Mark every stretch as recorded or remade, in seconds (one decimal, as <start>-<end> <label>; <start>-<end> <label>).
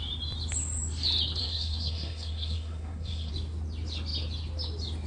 0.0-1.4 recorded; 1.4-3.3 remade; 3.3-5.1 recorded